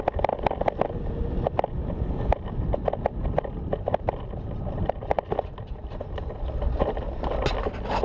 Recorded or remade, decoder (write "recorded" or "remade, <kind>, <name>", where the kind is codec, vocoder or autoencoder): recorded